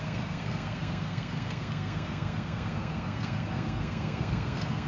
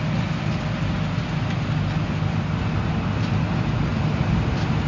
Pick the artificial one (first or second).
first